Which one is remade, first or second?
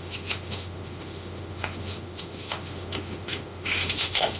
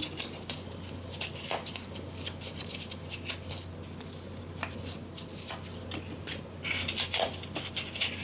first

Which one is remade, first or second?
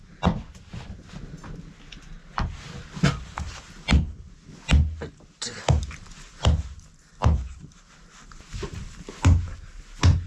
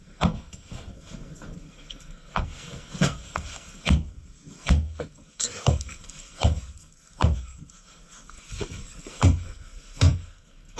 second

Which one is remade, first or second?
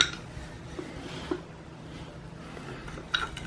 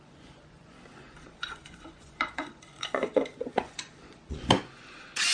second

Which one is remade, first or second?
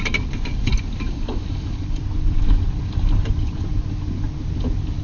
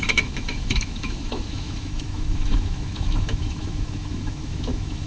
second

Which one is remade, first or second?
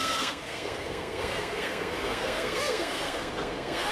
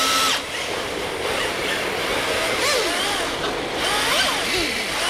first